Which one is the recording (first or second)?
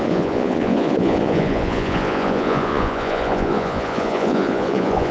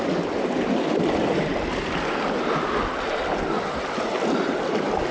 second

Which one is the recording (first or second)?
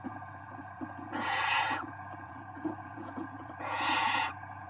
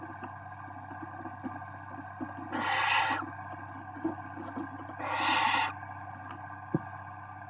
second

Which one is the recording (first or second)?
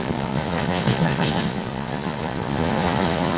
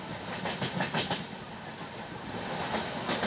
second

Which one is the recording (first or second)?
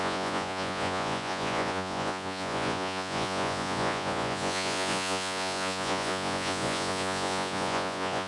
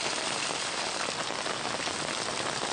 second